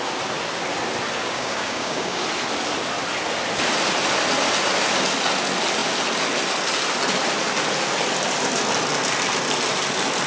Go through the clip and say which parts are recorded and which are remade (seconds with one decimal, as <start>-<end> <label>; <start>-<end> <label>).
0.0-1.2 recorded; 1.2-2.2 remade; 2.2-10.3 recorded

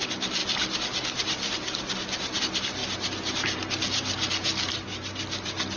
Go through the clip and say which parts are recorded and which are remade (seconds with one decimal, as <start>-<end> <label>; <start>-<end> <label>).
0.0-0.4 recorded; 0.4-2.4 remade; 2.4-5.8 recorded

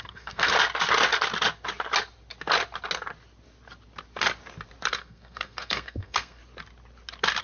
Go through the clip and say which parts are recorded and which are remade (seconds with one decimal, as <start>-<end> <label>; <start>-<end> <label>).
0.0-0.5 remade; 0.5-4.9 recorded; 4.9-6.4 remade; 6.4-7.4 recorded

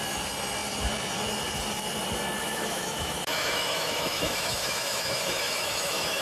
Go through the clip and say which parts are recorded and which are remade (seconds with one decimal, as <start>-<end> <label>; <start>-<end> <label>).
0.0-2.4 recorded; 2.4-6.2 remade